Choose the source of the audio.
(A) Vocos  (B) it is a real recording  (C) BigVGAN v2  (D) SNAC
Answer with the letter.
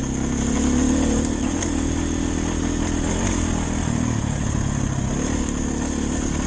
B